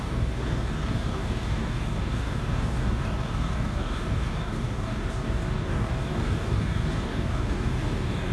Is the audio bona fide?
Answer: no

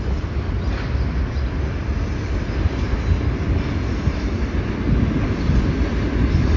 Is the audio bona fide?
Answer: yes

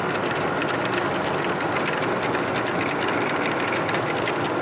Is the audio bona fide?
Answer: yes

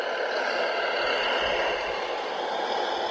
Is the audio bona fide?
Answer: yes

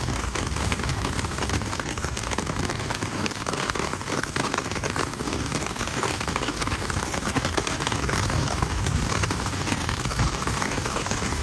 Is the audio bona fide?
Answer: no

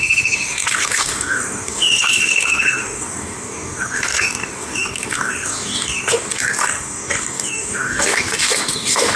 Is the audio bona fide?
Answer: no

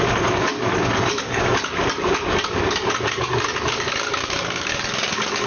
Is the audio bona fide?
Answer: no